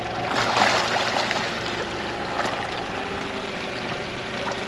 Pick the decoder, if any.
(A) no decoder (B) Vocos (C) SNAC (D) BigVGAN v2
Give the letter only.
A